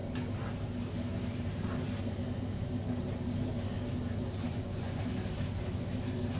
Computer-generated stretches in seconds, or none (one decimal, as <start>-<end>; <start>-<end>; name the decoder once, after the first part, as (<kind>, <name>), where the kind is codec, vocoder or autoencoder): 4.5-5.0 (vocoder, Vocos)